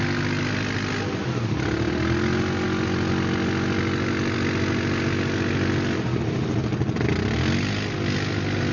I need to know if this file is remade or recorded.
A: recorded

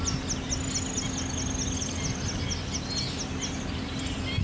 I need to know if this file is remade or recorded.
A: recorded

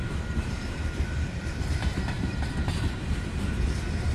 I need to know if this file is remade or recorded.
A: remade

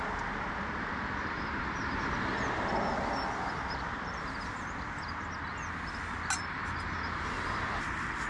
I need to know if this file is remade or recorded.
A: recorded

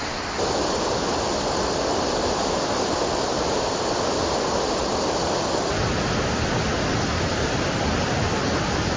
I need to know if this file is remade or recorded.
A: recorded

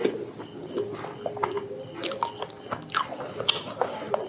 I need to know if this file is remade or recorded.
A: recorded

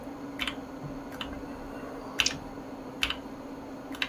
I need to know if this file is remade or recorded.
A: recorded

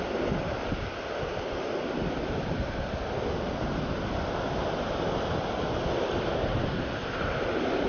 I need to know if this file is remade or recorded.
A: recorded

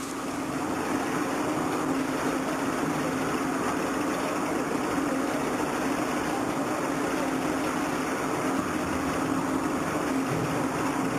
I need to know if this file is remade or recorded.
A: recorded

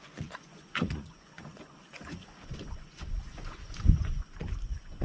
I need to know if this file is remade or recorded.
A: remade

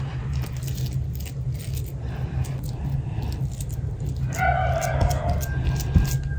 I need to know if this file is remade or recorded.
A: recorded